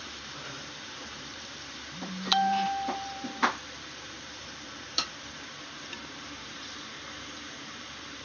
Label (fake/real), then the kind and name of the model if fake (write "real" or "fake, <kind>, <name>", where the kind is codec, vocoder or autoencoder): fake, vocoder, BigVGAN v2